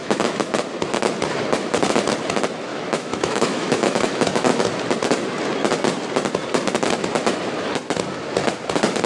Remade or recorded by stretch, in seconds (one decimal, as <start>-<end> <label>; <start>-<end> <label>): 0.0-0.5 remade; 0.5-2.7 recorded; 2.7-4.6 remade; 4.6-9.1 recorded